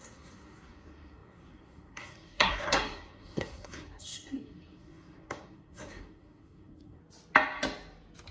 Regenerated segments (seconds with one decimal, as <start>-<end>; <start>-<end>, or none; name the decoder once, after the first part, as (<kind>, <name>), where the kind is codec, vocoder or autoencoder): 0.0-7.0 (codec, SNAC)

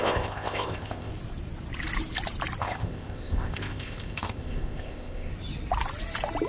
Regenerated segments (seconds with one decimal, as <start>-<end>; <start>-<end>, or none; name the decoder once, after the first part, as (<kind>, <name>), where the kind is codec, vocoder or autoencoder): 0.0-1.1 (codec, ZipCodec); 2.6-5.3

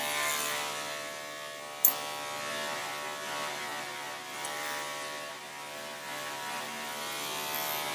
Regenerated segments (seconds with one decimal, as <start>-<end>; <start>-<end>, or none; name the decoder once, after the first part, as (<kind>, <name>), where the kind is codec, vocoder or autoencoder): none

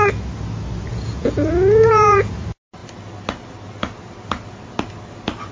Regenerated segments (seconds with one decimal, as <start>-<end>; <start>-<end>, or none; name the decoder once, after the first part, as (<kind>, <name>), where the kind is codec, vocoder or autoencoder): 0.9-2.3 (vocoder, Vocos)